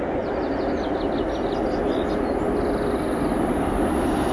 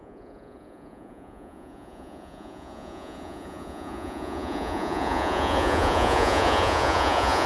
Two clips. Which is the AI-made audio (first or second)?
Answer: second